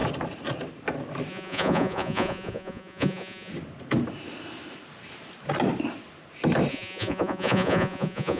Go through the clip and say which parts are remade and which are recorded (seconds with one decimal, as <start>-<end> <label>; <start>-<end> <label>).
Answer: 0.0-1.3 recorded; 1.3-3.5 remade; 3.5-6.7 recorded; 6.7-8.4 remade